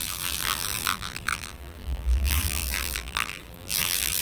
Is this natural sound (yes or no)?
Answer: no